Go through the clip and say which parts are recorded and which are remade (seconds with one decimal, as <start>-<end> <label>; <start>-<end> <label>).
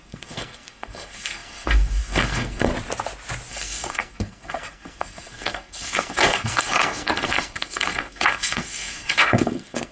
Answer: 0.0-2.7 remade; 2.7-3.5 recorded; 3.5-9.9 remade